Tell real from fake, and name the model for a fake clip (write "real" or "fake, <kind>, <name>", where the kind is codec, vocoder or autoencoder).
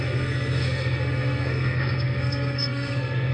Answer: fake, codec, SNAC